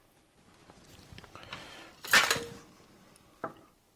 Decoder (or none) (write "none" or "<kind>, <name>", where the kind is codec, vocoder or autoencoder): none